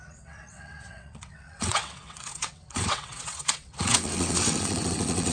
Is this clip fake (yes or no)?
yes